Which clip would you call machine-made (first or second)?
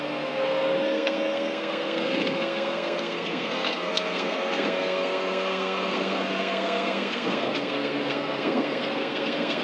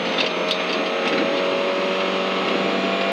first